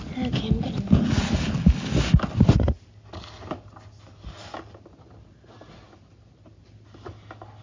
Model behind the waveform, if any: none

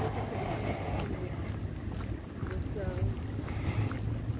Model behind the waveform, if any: none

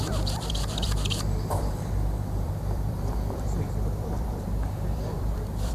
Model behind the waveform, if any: vocoder, BigVGAN v2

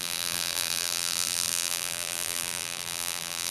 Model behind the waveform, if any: vocoder, BigVGAN v2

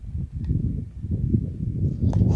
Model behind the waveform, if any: none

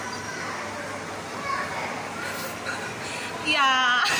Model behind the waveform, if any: none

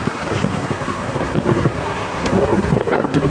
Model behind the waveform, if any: codec, SNAC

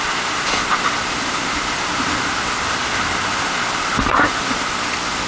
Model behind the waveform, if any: none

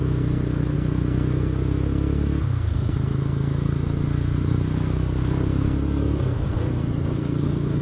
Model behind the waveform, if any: codec, SNAC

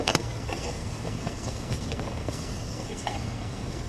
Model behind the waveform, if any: codec, SNAC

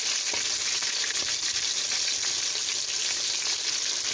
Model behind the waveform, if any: none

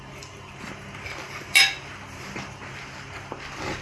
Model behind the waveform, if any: none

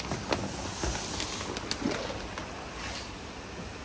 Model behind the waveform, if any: none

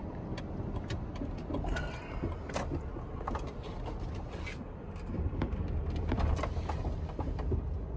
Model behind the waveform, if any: none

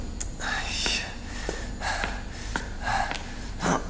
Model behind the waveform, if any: none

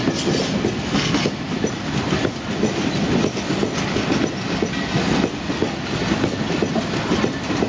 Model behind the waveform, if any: none